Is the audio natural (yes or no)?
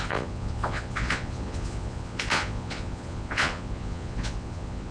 no